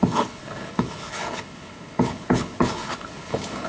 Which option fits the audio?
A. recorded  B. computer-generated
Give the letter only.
B